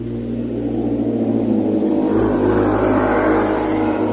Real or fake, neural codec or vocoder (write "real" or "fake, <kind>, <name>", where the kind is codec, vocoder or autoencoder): real